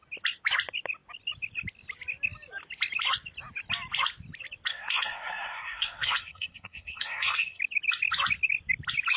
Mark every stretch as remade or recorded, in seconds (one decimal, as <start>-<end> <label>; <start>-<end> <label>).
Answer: 0.0-4.7 recorded; 4.7-7.6 remade; 7.6-9.2 recorded